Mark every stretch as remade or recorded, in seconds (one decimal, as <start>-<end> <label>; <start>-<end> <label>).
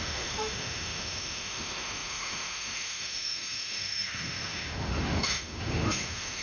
0.0-6.4 remade